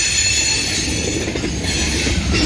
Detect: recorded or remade recorded